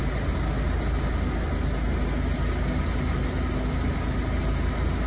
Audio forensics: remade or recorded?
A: recorded